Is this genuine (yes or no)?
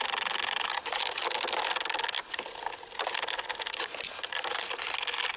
yes